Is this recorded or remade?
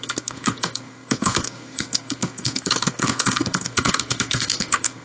remade